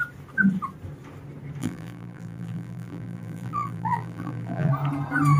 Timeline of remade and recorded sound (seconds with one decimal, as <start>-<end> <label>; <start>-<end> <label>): 0.0-1.6 recorded; 1.6-4.7 remade; 4.7-5.4 recorded